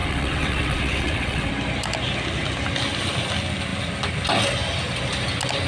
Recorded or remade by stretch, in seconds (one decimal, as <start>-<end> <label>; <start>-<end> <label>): 0.0-1.5 remade; 1.5-5.7 recorded